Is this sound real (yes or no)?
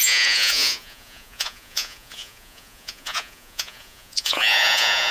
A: no